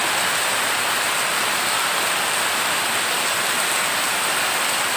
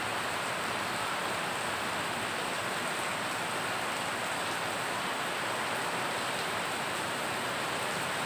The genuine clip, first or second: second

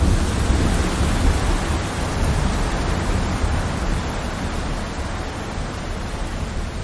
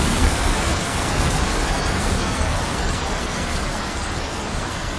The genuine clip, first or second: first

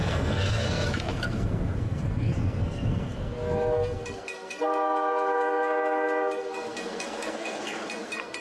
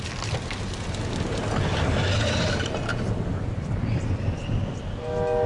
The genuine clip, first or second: second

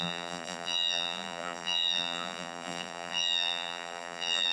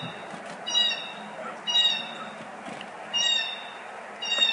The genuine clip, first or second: second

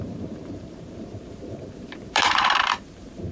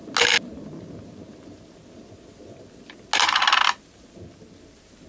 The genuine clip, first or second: second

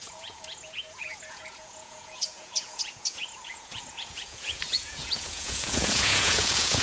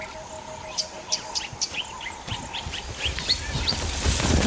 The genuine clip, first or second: second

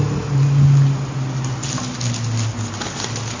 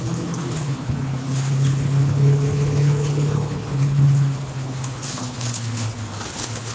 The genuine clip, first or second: first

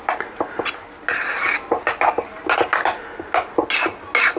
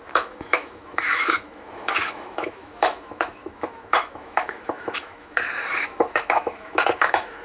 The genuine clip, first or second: first